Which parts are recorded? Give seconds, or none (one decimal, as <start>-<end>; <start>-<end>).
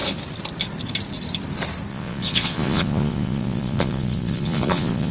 0.0-1.9